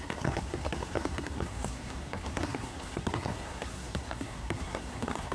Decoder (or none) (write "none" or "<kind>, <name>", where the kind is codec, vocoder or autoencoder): codec, SNAC